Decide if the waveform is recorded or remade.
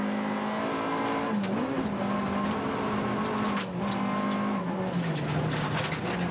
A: recorded